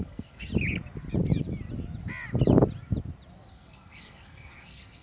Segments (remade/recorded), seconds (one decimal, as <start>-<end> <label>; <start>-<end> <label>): 0.0-0.5 remade; 0.5-3.5 recorded; 3.5-5.0 remade